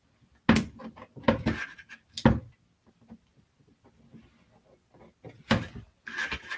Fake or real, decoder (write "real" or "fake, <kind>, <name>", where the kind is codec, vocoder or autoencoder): real